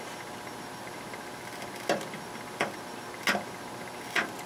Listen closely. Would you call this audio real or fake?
real